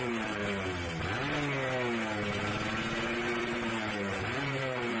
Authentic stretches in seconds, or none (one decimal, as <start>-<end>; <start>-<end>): 0.4-3.4